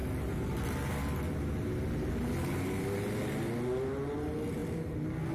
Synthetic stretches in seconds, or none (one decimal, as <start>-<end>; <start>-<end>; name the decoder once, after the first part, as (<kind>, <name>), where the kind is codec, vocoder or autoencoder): none

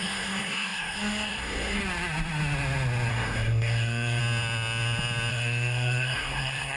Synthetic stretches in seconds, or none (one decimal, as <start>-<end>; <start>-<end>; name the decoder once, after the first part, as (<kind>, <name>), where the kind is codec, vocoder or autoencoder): 0.0-1.8 (codec, SNAC); 3.1-4.2; 5.3-6.8

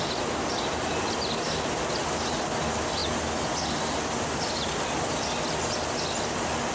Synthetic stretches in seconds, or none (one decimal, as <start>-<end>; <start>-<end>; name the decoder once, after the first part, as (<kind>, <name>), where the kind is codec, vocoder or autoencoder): none

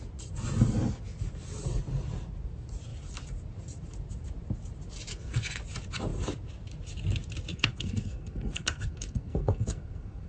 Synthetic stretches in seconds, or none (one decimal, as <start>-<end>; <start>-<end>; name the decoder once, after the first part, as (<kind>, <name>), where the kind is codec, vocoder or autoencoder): 5.1-5.6 (codec, SNAC); 7.5-10.3

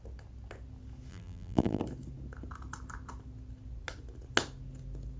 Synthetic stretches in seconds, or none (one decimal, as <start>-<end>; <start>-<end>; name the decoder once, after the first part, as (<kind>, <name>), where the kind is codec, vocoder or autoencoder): 1.1-1.8 (vocoder, BigVGAN v2)

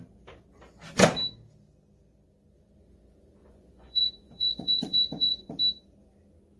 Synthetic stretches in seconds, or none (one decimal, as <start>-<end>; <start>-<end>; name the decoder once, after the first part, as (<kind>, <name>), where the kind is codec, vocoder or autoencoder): 3.4-5.5 (vocoder, Vocos)

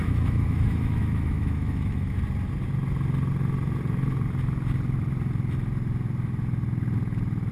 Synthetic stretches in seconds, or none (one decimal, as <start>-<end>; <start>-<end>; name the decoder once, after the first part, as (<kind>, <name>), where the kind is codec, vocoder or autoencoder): 0.0-2.2 (autoencoder, DAC-VAE)

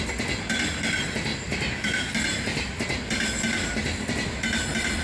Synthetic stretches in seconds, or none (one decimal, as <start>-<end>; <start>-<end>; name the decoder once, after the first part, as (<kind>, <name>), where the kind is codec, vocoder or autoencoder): none